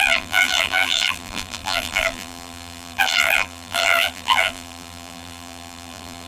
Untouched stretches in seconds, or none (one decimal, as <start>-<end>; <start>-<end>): none